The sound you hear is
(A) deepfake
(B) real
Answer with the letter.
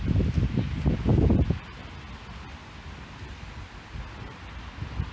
B